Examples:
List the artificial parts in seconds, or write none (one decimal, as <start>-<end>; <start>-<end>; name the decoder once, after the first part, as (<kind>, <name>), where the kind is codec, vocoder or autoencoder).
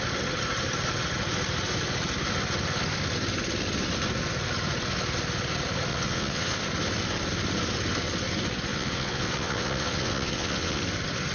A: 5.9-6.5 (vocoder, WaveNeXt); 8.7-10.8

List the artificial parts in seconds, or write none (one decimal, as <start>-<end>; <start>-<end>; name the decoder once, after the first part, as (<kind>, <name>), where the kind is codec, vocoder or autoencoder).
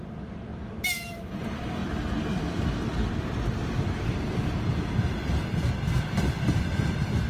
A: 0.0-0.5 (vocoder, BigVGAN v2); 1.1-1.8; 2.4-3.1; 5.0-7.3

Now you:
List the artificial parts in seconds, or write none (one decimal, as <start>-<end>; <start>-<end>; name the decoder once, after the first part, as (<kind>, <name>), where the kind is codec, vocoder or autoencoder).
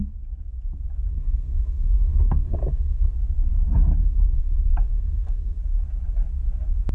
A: 1.1-3.1 (codec, SNAC); 4.0-5.6